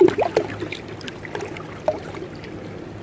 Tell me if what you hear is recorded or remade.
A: recorded